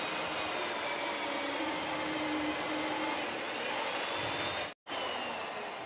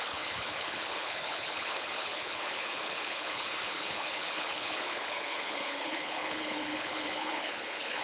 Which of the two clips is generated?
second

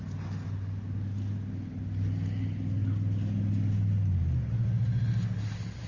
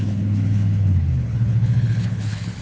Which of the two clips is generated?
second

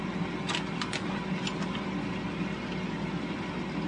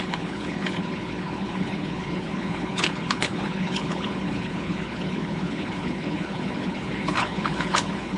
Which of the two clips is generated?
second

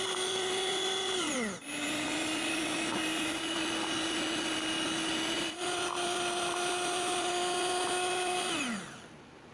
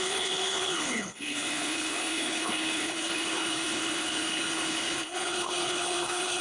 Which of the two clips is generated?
second